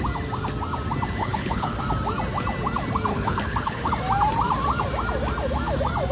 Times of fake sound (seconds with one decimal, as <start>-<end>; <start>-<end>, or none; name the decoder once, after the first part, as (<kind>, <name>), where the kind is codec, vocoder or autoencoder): 1.2-1.8 (codec, HILCodec); 3.1-3.9

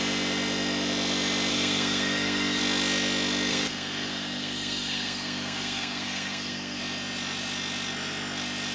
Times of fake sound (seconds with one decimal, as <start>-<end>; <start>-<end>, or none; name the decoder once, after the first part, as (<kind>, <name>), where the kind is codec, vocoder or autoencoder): 1.5-2.6 (codec, SNAC); 3.5-6.8

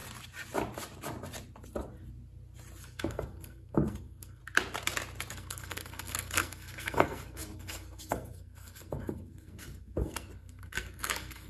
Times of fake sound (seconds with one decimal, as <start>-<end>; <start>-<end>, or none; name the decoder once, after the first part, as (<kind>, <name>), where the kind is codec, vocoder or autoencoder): 2.8-4.4 (codec, SNAC); 5.3-11.5

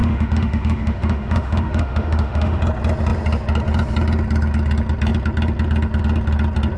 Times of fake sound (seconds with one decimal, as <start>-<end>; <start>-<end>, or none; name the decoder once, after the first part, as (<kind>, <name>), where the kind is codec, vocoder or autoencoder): 0.0-2.6 (autoencoder, DAC-VAE)

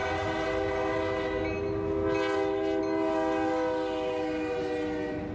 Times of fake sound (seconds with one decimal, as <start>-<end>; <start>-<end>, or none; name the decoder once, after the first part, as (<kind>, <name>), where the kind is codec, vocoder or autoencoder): none